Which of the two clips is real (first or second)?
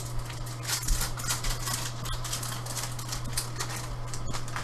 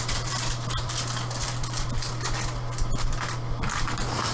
first